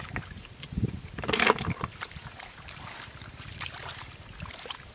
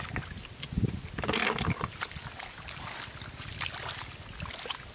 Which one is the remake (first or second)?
first